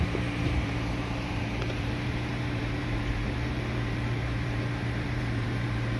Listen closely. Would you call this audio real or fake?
fake